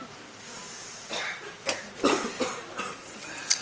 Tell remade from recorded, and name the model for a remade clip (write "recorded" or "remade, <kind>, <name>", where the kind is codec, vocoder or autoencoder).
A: remade, vocoder, BigVGAN v2